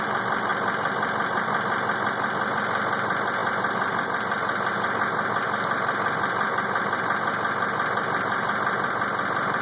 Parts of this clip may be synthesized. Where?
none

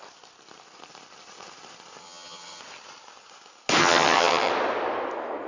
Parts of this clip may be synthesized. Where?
2.0-2.6 (vocoder, HiFi-GAN); 3.8-4.5

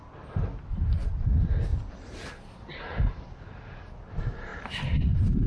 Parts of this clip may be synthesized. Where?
1.7-3.3 (vocoder, BigVGAN v2); 4.5-5.1

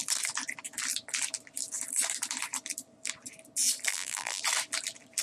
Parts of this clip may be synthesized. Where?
3.9-4.4 (vocoder, BigVGAN v2)

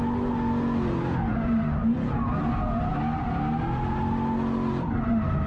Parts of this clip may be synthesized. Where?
none

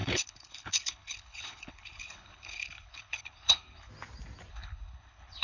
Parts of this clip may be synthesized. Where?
0.0-3.9 (codec, HILCodec); 4.5-5.4

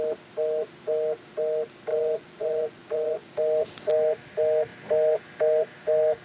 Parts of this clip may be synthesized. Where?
1.9-3.3 (vocoder, Vocos)